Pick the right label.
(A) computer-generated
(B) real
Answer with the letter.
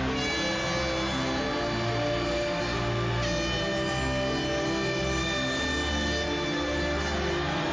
B